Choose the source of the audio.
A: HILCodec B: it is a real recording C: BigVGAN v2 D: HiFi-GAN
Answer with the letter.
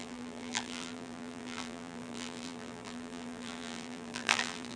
C